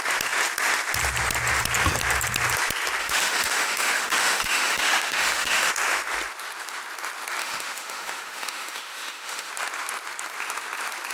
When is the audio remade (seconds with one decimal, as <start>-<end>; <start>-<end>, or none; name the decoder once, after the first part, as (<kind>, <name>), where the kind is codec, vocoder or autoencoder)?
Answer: 3.0-5.7 (autoencoder, DAC-VAE); 7.4-9.5